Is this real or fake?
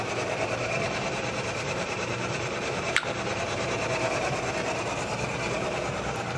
fake